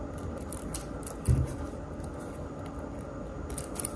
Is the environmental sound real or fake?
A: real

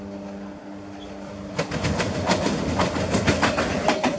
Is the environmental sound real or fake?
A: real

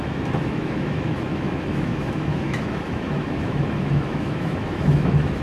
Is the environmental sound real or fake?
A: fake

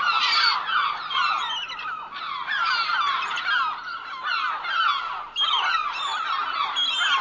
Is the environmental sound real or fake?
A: real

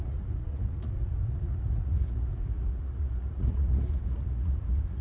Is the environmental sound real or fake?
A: fake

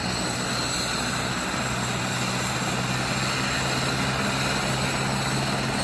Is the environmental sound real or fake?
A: real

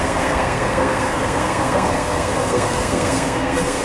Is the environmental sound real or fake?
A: fake